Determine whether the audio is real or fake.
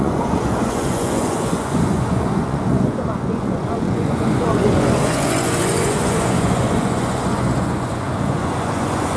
fake